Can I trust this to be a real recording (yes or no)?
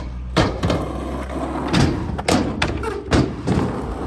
yes